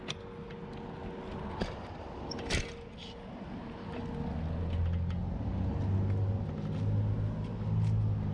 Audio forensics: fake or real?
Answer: real